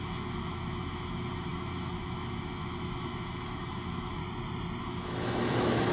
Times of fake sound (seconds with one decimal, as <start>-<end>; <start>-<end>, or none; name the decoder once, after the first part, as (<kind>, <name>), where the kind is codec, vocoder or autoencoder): 0.0-4.2 (autoencoder, DAC-VAE); 4.8-5.9